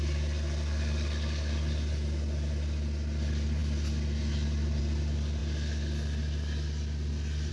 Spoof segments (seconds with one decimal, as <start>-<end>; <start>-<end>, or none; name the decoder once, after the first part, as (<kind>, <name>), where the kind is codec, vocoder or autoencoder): none